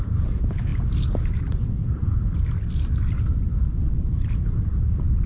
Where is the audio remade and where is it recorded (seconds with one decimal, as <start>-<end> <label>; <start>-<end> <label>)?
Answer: 0.0-2.0 remade; 2.0-3.6 recorded; 3.6-5.3 remade